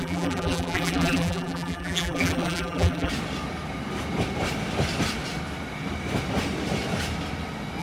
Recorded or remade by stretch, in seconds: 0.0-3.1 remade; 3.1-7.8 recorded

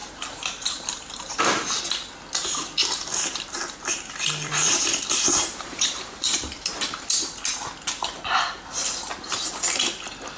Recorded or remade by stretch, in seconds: 0.0-1.8 remade; 1.8-2.8 recorded; 2.8-7.0 remade; 7.0-10.4 recorded